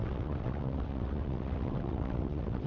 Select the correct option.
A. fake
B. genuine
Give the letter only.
A